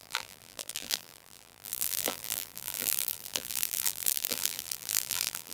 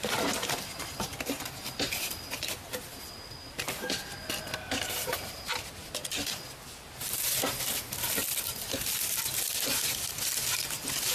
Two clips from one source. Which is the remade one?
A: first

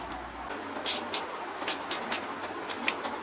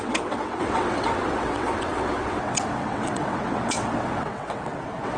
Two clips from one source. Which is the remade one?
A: second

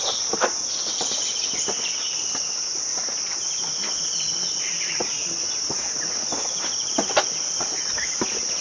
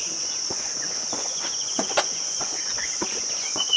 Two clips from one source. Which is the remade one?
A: second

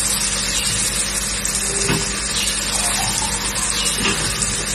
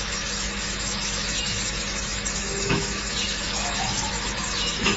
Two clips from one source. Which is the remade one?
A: second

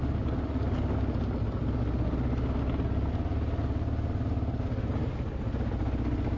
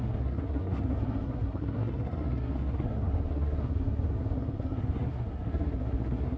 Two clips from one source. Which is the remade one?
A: second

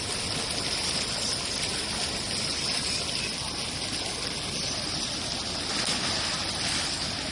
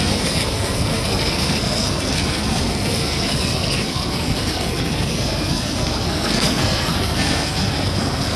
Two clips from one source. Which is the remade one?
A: second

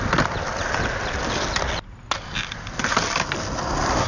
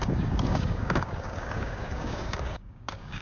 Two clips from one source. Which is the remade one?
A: second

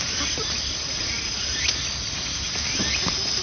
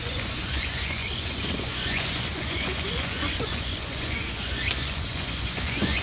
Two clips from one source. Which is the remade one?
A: second